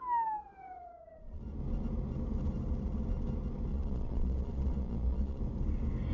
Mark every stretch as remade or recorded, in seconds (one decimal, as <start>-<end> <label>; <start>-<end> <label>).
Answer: 0.0-0.4 recorded; 0.4-1.4 remade; 1.4-3.7 recorded; 3.7-5.4 remade; 5.4-6.1 recorded